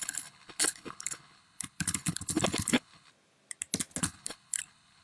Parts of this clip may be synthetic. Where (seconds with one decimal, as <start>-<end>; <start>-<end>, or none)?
0.0-3.1; 4.0-5.0